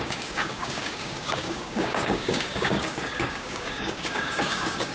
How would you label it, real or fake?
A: fake